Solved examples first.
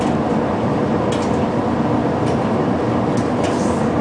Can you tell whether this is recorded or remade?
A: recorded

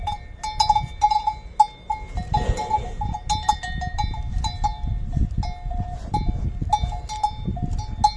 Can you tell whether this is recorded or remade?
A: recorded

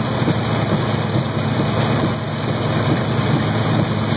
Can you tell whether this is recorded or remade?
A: recorded